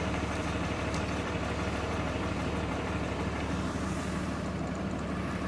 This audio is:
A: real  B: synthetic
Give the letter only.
B